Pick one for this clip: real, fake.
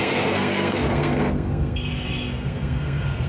fake